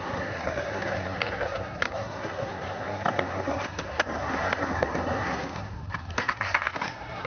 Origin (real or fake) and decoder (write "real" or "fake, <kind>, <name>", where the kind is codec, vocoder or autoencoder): fake, codec, SNAC